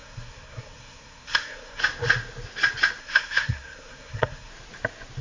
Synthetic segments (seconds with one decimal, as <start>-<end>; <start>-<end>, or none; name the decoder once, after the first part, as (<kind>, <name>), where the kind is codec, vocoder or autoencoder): 0.0-1.8 (codec, SNAC); 3.0-4.5